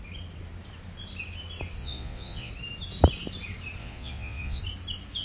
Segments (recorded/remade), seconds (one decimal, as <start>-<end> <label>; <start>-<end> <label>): 0.0-1.8 recorded; 1.8-2.5 remade; 2.5-3.8 recorded; 3.8-4.6 remade; 4.6-5.2 recorded